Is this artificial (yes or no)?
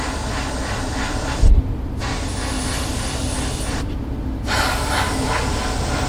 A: no